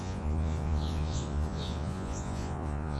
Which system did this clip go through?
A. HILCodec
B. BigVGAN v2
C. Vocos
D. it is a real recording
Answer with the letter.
C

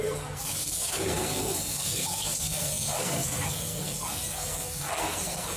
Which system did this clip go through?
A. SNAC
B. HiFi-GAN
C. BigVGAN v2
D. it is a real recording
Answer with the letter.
A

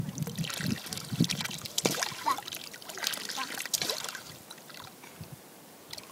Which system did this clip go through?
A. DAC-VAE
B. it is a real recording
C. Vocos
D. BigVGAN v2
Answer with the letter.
B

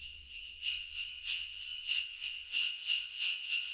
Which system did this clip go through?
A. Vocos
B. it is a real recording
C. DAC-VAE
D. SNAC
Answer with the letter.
A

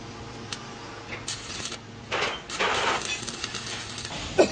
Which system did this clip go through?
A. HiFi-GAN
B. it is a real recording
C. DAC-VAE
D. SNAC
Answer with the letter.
B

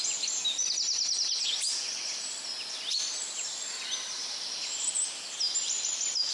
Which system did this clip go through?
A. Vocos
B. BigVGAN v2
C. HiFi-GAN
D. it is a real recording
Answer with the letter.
D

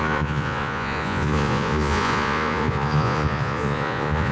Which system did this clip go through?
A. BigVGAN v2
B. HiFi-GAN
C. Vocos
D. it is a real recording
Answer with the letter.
C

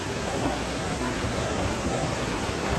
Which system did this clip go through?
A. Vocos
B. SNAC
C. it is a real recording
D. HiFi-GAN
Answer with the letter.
B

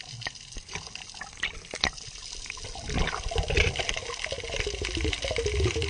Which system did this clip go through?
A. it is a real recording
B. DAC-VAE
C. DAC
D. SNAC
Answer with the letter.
A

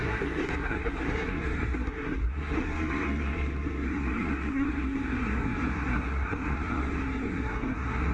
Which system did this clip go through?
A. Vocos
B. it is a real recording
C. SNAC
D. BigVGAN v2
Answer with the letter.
C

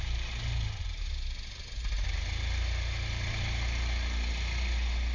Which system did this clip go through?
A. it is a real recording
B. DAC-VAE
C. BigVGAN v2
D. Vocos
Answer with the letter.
A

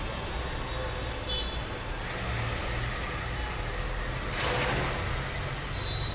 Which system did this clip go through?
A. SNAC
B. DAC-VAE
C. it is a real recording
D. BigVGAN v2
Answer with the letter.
C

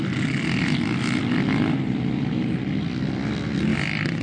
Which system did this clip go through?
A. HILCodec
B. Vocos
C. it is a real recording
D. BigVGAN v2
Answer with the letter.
C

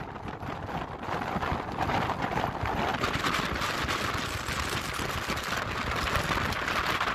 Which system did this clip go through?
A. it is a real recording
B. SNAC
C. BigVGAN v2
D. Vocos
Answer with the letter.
A